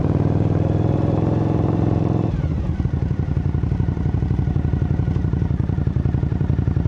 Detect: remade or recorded remade